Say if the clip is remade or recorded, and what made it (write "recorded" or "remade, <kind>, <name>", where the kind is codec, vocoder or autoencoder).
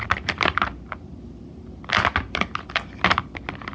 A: recorded